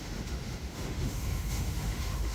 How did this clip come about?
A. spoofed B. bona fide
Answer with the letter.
A